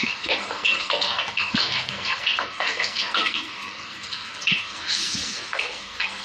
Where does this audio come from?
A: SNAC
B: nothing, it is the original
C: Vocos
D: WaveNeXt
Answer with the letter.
A